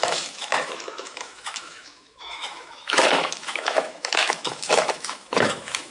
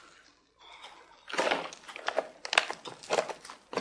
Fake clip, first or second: first